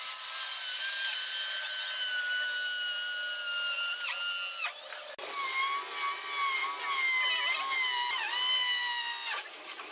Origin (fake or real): real